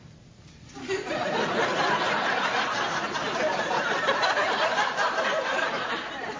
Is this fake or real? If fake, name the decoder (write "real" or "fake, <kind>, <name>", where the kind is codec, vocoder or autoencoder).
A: real